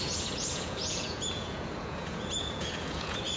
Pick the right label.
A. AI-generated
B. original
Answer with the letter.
A